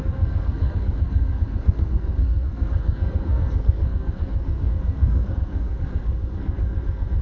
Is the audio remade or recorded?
remade